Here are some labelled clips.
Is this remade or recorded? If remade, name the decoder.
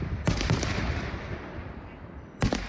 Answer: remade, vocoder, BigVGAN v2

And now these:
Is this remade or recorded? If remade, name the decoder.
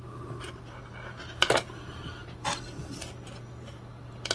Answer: recorded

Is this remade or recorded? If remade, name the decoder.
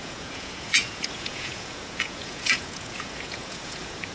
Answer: remade, vocoder, Vocos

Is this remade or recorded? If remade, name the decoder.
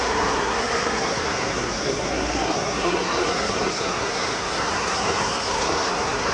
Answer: remade, codec, SNAC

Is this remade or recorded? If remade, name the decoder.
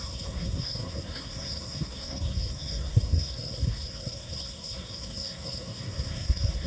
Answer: remade, codec, SNAC